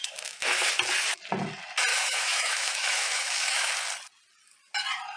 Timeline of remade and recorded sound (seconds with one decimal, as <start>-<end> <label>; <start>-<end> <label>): 0.0-0.7 remade; 0.7-1.9 recorded; 1.9-3.7 remade; 3.7-5.2 recorded